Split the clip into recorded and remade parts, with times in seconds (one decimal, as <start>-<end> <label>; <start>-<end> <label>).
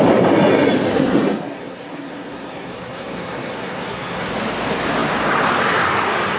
0.0-0.9 recorded; 0.9-4.3 remade; 4.3-6.4 recorded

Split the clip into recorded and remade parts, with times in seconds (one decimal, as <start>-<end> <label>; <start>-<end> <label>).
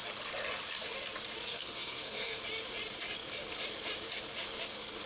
0.0-1.5 recorded; 1.5-2.4 remade; 2.4-5.1 recorded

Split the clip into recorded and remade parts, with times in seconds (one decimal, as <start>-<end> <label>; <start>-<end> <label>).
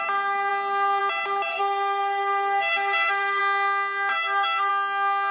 0.0-1.5 recorded; 1.5-3.4 remade; 3.4-4.1 recorded; 4.1-4.7 remade; 4.7-5.3 recorded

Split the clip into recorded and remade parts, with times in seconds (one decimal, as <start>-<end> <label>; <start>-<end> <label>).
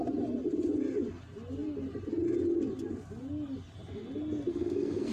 0.0-4.5 recorded; 4.5-5.1 remade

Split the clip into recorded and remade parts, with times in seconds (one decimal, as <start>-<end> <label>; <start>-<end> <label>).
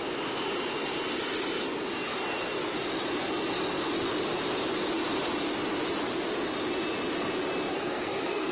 0.0-7.7 recorded; 7.7-8.5 remade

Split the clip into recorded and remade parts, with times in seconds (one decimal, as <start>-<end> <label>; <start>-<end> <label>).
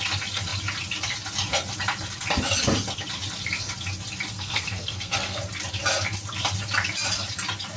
0.0-4.3 recorded; 4.3-5.4 remade; 5.4-7.8 recorded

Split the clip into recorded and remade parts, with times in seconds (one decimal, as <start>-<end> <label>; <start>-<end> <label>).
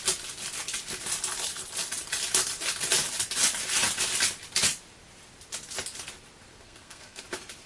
0.0-6.5 recorded; 6.5-7.2 remade; 7.2-7.7 recorded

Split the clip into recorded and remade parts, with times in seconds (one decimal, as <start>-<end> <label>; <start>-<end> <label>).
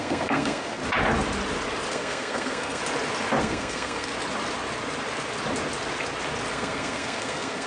0.0-0.8 remade; 0.8-1.9 recorded; 1.9-2.8 remade; 2.8-3.4 recorded; 3.4-4.1 remade; 4.1-6.5 recorded; 6.5-7.7 remade